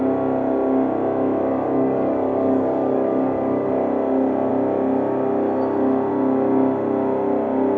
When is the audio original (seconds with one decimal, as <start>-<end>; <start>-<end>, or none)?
0.0-1.5; 3.7-7.8